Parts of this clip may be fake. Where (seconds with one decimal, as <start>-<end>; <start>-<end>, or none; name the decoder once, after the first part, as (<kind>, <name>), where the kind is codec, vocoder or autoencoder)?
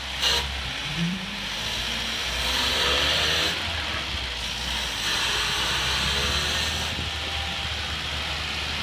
0.8-1.8 (vocoder, BigVGAN v2); 2.2-3.6; 5.1-5.9